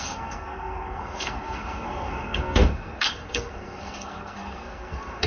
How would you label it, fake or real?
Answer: fake